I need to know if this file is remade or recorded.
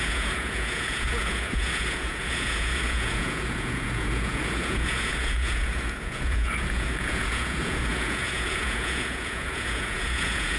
remade